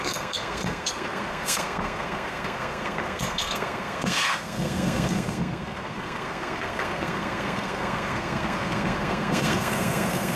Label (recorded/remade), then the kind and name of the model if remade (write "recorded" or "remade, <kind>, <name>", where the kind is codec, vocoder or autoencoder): remade, codec, SNAC